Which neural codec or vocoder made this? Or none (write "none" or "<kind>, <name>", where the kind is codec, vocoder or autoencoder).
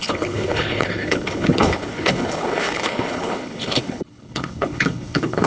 codec, HILCodec